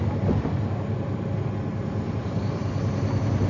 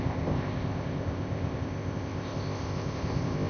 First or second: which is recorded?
first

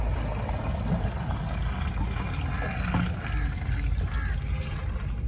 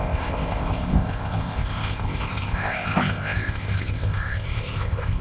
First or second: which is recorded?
first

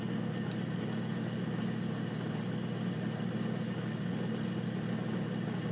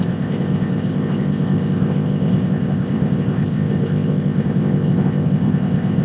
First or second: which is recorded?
first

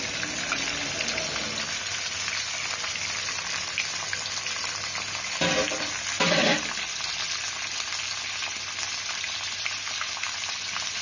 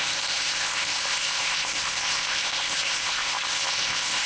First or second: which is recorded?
first